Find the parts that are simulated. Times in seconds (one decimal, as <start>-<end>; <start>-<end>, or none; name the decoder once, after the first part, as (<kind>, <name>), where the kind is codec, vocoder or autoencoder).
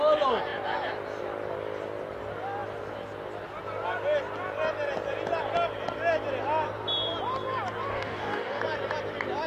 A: 7.9-8.6 (codec, DAC)